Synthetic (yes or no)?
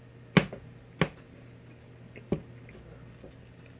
no